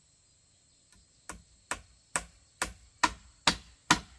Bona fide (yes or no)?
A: yes